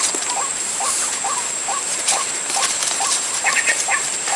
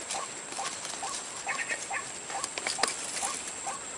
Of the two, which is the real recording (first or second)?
second